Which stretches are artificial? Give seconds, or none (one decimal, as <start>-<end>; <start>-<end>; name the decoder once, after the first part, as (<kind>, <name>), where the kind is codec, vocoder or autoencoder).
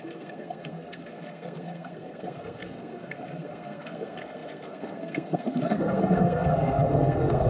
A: 0.0-7.5 (codec, SNAC)